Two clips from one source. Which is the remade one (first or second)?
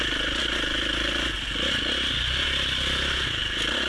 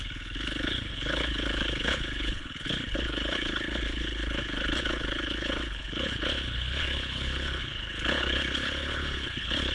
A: second